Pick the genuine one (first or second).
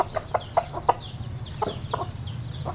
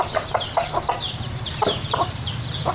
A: first